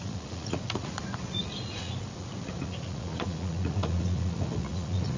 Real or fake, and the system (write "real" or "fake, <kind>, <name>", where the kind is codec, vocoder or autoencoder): fake, vocoder, Vocos